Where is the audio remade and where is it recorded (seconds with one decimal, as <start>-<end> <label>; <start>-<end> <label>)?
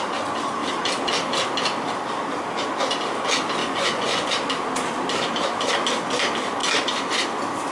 0.0-3.6 recorded; 3.6-4.3 remade; 4.3-7.7 recorded